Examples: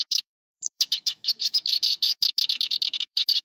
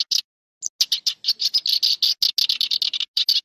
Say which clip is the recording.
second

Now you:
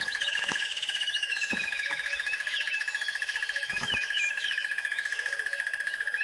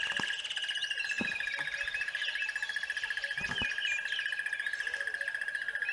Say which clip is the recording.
second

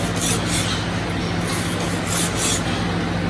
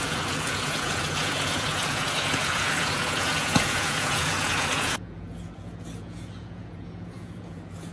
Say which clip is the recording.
first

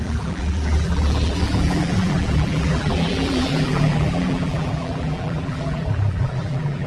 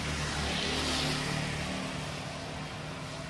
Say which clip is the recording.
second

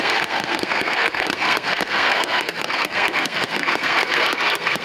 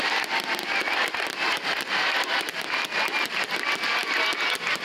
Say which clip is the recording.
second